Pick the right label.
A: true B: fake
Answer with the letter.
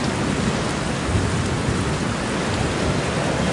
A